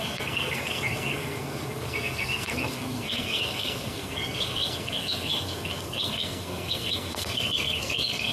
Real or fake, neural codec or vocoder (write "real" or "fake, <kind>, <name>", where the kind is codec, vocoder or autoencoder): fake, codec, SNAC